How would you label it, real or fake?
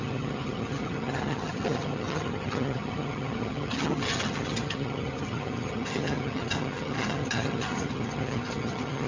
fake